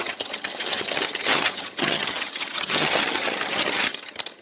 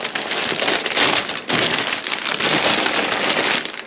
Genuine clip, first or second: second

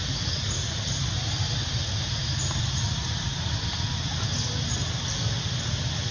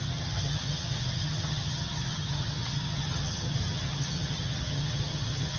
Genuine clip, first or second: first